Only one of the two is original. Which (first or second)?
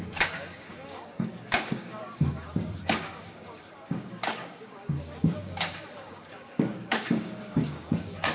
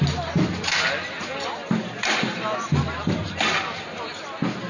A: second